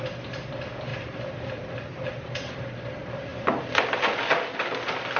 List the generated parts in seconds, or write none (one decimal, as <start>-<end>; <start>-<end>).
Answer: 0.9-2.7